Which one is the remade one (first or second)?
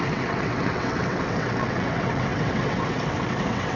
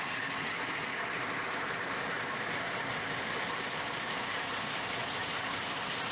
first